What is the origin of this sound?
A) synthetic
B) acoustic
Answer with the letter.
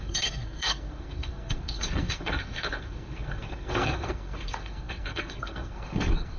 A